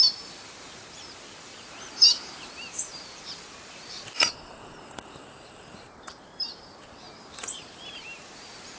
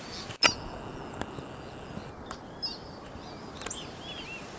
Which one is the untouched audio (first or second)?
second